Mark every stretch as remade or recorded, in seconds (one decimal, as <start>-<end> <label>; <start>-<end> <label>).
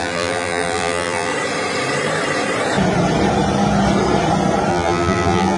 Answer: 0.0-1.3 remade; 1.3-4.7 recorded; 4.7-5.6 remade